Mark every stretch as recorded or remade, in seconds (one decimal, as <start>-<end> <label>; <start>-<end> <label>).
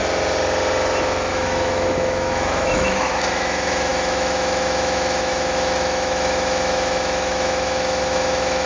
0.0-1.3 recorded; 1.3-8.7 remade